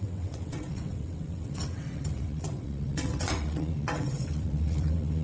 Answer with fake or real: fake